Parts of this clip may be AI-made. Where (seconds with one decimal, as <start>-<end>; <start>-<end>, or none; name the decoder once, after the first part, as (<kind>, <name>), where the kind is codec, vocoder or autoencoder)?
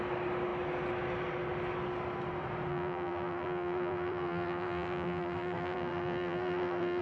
2.7-7.0 (vocoder, BigVGAN v2)